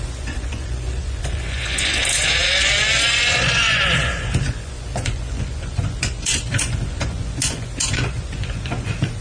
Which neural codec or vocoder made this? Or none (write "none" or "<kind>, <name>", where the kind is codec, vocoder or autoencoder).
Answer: vocoder, Vocos